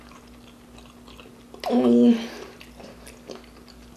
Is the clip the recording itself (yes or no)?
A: yes